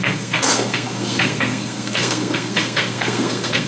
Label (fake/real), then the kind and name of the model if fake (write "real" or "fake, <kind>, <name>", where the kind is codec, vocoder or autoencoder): fake, codec, SNAC